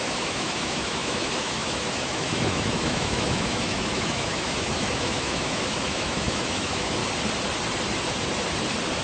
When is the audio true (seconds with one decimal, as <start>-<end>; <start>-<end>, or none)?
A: 7.0-9.0